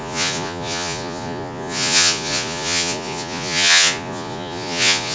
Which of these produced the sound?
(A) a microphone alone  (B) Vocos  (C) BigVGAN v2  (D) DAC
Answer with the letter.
B